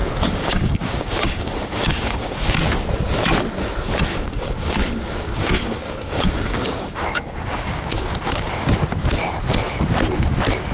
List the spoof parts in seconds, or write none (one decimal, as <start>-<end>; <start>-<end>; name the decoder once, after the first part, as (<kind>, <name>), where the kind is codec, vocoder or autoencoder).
0.0-2.6 (codec, DAC); 4.1-8.7